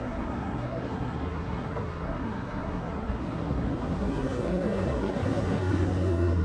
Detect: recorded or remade remade